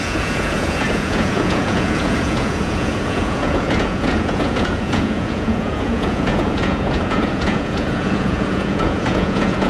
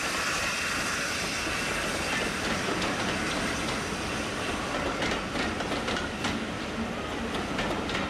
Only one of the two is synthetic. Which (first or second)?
first